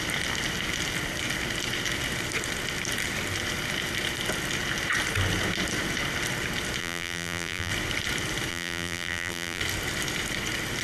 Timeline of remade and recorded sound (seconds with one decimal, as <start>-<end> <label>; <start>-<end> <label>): 0.0-6.8 recorded; 6.8-7.7 remade; 7.7-8.5 recorded; 8.5-9.6 remade; 9.6-10.8 recorded